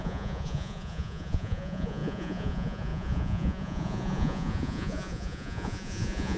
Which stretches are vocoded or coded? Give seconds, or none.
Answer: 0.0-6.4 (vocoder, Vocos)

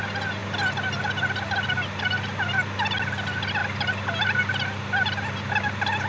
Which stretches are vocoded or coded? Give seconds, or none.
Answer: none

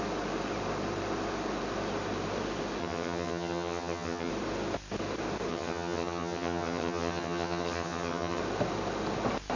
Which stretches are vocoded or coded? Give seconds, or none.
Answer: 2.8-4.3 (vocoder, HiFi-GAN); 5.5-8.4

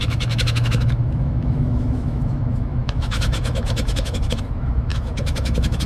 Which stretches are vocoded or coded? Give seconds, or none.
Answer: 0.0-5.9 (autoencoder, DAC-VAE)